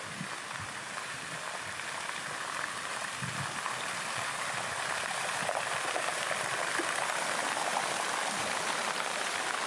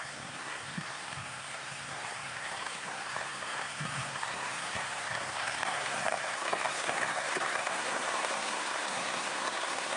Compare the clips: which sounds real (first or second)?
first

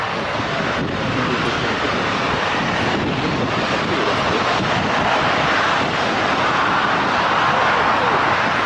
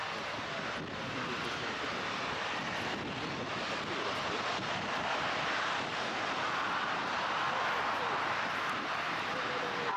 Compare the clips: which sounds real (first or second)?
second